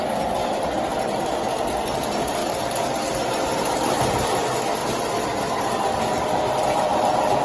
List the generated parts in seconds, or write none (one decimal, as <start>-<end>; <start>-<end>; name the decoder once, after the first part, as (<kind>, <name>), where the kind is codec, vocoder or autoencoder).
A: 2.4-3.6 (vocoder, BigVGAN v2); 4.8-7.4